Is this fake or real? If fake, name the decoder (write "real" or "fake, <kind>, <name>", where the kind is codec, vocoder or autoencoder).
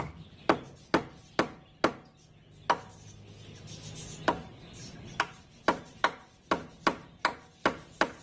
real